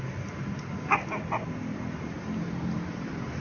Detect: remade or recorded recorded